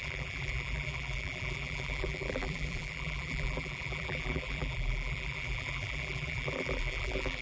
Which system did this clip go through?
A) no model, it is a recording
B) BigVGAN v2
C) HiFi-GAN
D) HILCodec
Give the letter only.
B